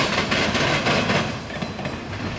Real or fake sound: real